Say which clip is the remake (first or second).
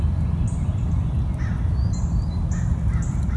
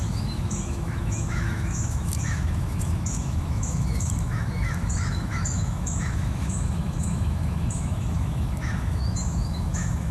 second